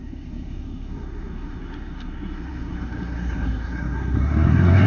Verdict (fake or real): fake